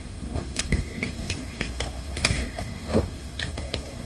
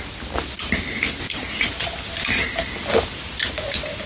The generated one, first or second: first